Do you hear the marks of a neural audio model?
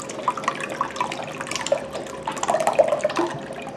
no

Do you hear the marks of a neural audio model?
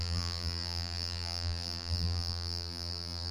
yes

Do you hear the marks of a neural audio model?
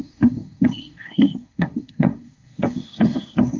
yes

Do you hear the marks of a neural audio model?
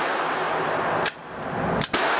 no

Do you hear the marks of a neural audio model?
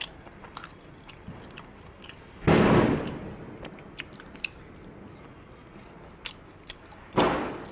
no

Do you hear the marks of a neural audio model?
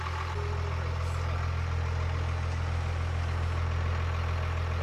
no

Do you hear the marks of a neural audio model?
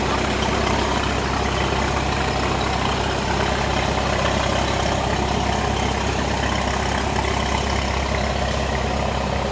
no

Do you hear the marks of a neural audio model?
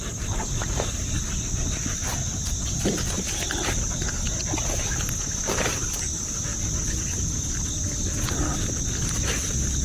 no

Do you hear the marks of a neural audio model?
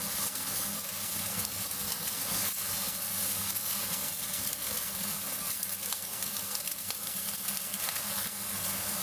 yes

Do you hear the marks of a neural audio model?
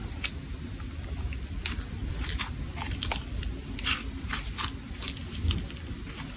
no